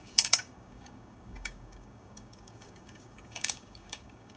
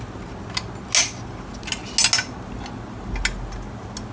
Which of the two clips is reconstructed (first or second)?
first